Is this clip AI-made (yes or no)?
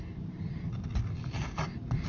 no